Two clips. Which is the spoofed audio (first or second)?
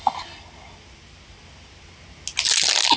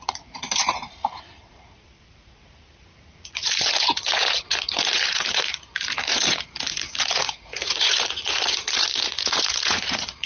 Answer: second